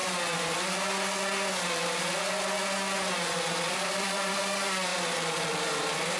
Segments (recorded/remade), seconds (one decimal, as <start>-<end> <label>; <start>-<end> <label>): 0.0-3.7 recorded; 3.7-4.9 remade; 4.9-5.5 recorded; 5.5-6.2 remade